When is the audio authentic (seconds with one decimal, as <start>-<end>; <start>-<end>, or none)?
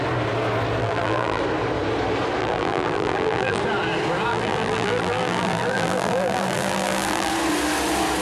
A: 0.0-0.8; 1.4-2.4; 3.6-4.3; 7.3-8.2